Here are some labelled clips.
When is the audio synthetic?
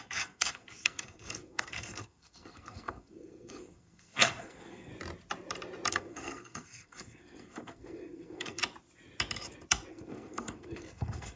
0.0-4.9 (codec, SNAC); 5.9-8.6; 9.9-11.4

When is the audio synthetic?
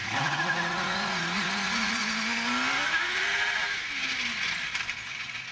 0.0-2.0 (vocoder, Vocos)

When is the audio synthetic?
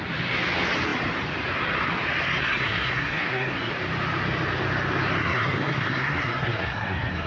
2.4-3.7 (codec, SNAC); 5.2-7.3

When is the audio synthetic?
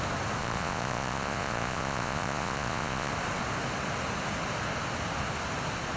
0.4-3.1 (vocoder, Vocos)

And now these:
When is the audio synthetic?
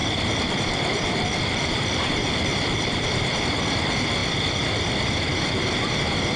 0.0-3.4 (vocoder, BigVGAN v2)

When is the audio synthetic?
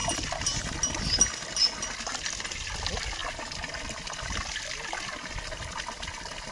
none